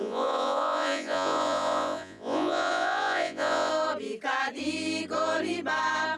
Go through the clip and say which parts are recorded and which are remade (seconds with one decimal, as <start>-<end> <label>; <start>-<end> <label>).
0.0-3.7 remade; 3.7-6.2 recorded